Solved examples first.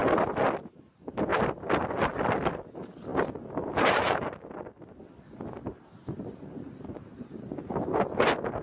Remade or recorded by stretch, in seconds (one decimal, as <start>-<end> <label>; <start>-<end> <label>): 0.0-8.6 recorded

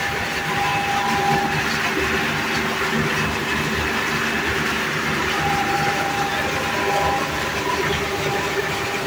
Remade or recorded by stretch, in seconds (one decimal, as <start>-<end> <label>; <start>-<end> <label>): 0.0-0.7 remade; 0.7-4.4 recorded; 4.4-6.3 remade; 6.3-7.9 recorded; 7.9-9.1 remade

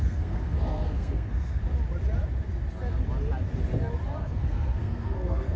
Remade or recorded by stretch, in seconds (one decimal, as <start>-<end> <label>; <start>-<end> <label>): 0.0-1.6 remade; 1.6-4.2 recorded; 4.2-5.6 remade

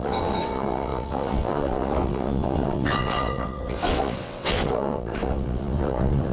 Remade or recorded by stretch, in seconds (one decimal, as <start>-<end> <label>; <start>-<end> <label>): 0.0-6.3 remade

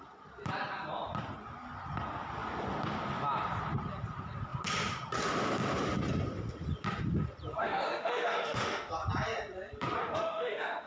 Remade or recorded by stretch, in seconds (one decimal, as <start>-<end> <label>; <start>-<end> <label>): 0.0-7.6 recorded; 7.6-8.9 remade; 8.9-10.0 recorded; 10.0-10.9 remade

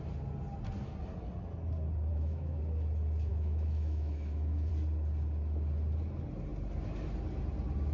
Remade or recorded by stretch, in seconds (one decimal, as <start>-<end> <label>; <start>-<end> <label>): 0.0-2.1 recorded; 2.1-2.6 remade; 2.6-3.3 recorded; 3.3-4.7 remade; 4.7-7.9 recorded